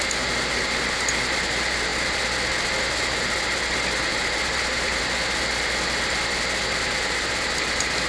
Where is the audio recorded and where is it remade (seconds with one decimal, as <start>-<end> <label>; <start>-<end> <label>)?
0.0-4.1 recorded; 4.1-5.0 remade; 5.0-8.1 recorded